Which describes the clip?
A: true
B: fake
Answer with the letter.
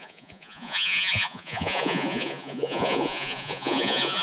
B